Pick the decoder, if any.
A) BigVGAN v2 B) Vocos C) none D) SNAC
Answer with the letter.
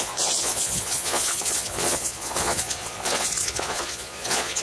B